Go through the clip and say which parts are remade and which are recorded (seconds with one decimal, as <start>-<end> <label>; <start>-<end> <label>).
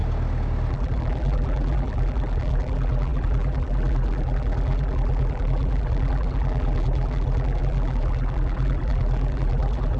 0.0-0.7 recorded; 0.7-10.0 remade